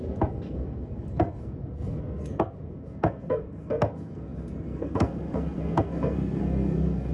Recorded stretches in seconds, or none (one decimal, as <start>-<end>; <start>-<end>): none